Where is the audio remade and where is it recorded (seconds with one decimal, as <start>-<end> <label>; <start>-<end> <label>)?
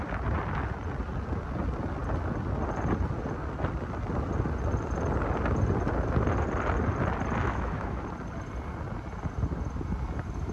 0.0-7.4 recorded; 7.4-8.0 remade; 8.0-10.5 recorded